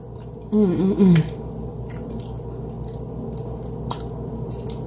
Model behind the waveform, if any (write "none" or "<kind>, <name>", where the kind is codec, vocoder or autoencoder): none